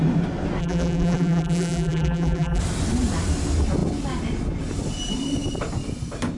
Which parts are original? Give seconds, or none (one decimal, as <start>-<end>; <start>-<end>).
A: 0.0-0.6; 2.6-6.4